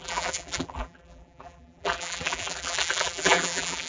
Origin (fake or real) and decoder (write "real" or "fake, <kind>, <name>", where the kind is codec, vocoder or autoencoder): fake, vocoder, BigVGAN v2